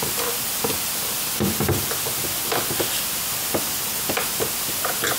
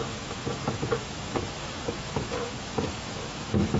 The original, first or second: first